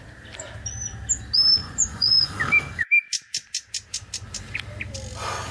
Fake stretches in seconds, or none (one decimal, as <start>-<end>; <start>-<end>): 1.6-2.3